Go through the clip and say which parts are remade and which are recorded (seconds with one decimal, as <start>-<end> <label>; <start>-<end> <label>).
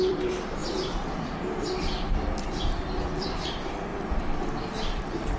0.0-5.4 remade